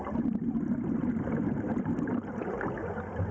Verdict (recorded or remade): recorded